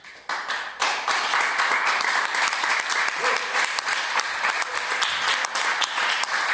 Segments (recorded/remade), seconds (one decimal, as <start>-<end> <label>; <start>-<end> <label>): 0.0-0.8 recorded; 0.8-4.7 remade; 4.7-6.5 recorded